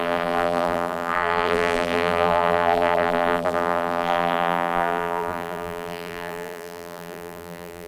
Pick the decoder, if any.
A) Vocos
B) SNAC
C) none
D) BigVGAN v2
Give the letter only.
D